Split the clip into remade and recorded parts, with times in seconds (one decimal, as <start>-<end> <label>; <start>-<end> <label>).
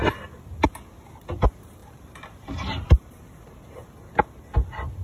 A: 0.0-1.8 recorded; 1.8-3.1 remade; 3.1-5.0 recorded